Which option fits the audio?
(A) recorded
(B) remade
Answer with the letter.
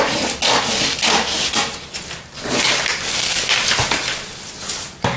A